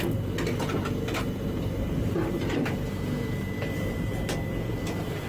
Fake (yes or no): no